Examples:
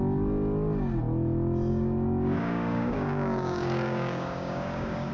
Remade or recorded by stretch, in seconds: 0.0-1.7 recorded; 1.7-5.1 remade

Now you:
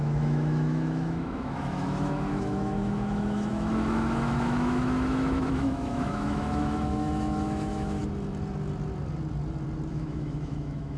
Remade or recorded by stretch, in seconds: 0.0-8.0 remade; 8.0-9.9 recorded; 9.9-11.0 remade